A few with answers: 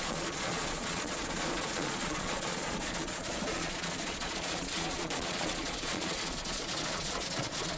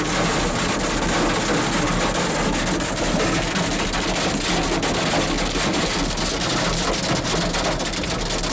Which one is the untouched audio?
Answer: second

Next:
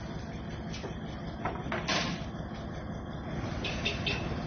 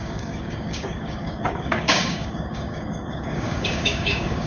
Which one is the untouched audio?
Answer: first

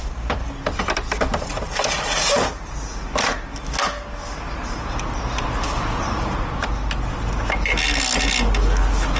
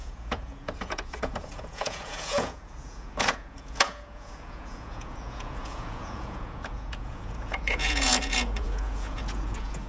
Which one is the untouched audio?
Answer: first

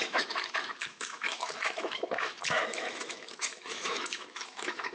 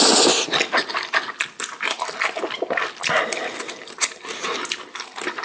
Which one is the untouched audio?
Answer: second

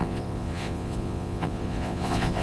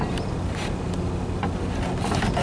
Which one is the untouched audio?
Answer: second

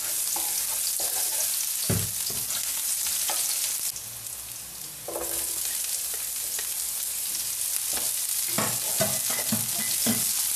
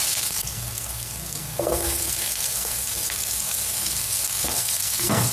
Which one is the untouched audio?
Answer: first